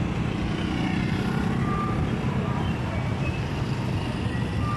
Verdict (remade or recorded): recorded